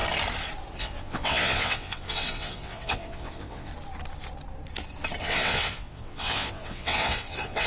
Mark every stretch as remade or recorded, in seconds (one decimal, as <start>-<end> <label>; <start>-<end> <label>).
0.0-0.8 recorded; 0.8-3.7 remade; 3.7-5.2 recorded; 5.2-7.7 remade